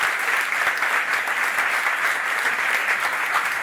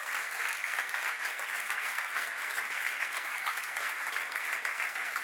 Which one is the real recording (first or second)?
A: first